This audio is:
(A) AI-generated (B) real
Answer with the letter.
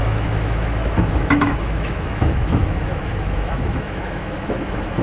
A